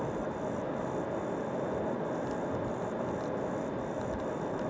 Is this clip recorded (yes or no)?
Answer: yes